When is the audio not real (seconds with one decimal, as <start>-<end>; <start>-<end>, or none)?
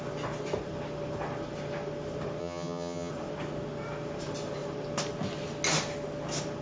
2.4-3.1